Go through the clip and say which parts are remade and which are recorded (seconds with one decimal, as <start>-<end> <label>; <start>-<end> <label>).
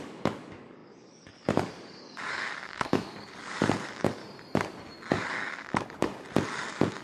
0.0-4.2 remade; 4.2-5.1 recorded; 5.1-6.1 remade; 6.1-6.6 recorded; 6.6-7.0 remade